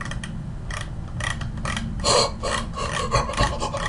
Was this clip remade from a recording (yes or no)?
no